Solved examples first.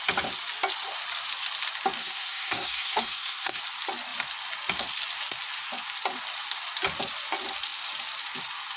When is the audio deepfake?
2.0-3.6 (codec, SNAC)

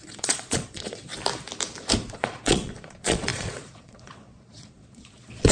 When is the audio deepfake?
0.0-1.1 (vocoder, Vocos); 2.1-5.5

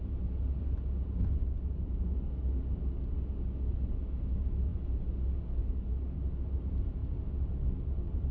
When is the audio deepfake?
none

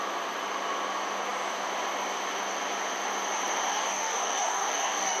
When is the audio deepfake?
3.7-5.2 (codec, DAC)

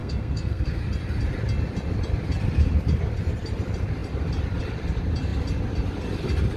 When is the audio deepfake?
0.0-0.8 (codec, SNAC)

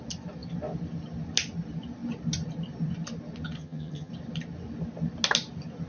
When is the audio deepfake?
3.6-4.1 (vocoder, HiFi-GAN)

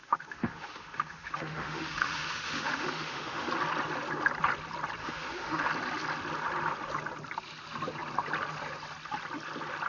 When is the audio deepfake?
0.0-3.5 (autoencoder, DAC-VAE); 5.0-5.7